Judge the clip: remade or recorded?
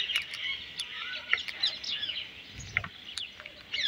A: recorded